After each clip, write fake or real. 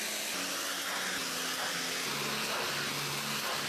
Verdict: real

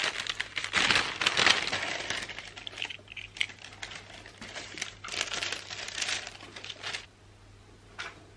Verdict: real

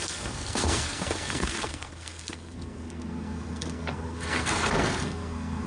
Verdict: fake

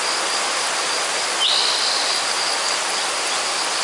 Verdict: real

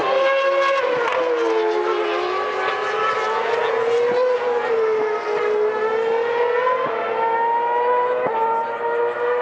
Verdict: real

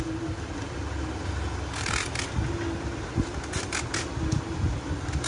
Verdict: real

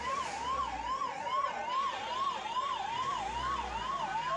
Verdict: real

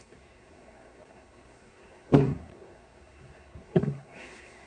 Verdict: fake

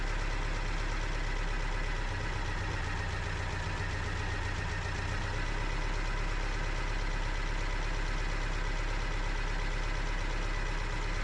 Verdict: real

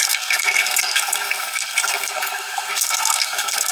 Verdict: fake